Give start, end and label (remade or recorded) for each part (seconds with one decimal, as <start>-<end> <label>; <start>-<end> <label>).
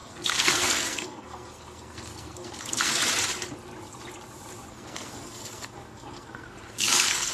0.0-3.0 remade; 3.0-4.7 recorded; 4.7-7.3 remade